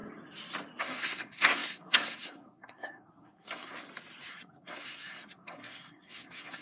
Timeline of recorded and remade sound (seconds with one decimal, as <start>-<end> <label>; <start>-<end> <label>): 0.0-0.8 recorded; 0.8-3.8 remade; 3.8-4.3 recorded; 4.3-6.6 remade